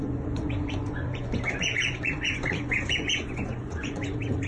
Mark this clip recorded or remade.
remade